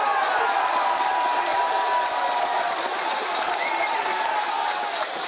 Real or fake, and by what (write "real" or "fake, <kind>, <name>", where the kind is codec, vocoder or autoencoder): real